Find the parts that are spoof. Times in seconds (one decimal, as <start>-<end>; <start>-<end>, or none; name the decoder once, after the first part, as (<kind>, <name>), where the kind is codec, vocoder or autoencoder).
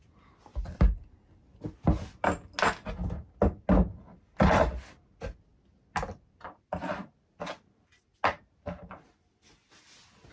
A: none